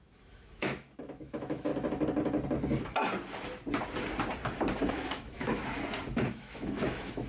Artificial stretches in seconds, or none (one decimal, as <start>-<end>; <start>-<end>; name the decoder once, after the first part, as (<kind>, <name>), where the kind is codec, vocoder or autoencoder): 0.0-1.7 (autoencoder, DAC-VAE); 4.9-5.6; 6.3-7.3